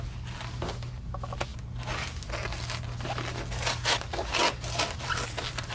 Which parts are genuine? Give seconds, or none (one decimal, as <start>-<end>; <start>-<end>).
0.0-5.7